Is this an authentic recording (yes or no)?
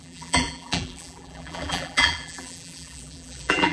no